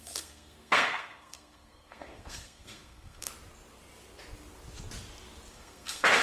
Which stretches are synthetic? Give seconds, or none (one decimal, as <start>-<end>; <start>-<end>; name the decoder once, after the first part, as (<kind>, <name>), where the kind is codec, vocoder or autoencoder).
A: 0.0-3.3 (codec, SNAC); 5.5-6.2